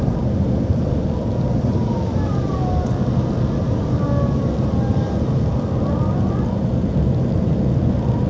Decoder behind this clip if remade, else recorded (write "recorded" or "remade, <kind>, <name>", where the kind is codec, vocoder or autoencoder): recorded